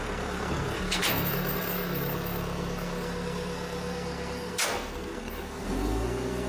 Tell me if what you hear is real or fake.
fake